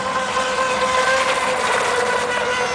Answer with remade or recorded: recorded